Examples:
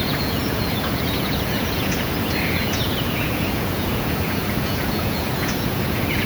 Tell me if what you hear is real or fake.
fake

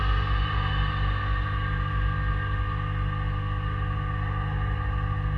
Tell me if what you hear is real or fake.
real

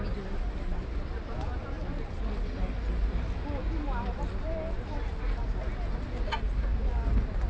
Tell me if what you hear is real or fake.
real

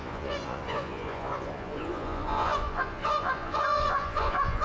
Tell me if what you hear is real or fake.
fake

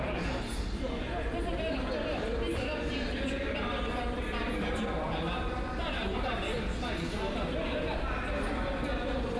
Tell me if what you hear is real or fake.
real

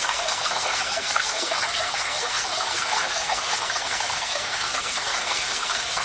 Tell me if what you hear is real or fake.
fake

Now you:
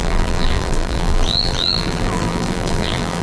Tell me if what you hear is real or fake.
fake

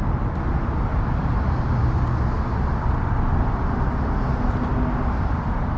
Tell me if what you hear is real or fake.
real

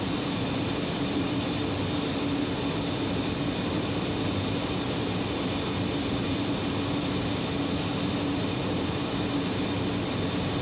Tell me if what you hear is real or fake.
real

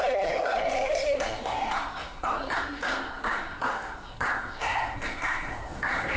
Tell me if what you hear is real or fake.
fake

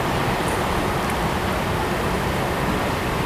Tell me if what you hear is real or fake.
real